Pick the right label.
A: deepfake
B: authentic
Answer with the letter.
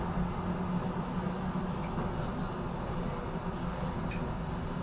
B